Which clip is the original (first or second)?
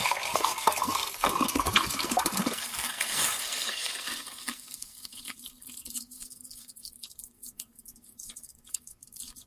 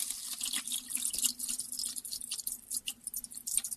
second